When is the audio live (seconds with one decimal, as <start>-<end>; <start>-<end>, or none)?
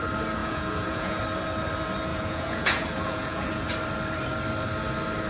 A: 0.0-0.4; 1.2-2.1; 3.7-5.3